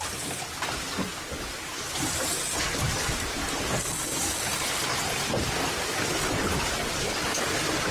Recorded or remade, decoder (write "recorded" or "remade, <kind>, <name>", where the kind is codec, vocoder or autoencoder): recorded